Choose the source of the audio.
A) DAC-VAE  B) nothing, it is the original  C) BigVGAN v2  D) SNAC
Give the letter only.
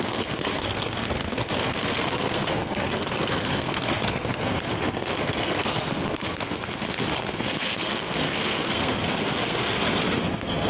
D